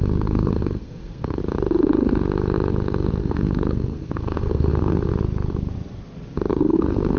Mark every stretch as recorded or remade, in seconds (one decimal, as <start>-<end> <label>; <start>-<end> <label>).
0.0-1.4 remade; 1.4-3.2 recorded; 3.2-5.1 remade; 5.1-6.5 recorded; 6.5-7.2 remade